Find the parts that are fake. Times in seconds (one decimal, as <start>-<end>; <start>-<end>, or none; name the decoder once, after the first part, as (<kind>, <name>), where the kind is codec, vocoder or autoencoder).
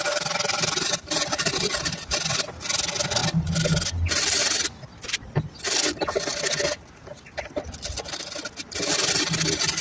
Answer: none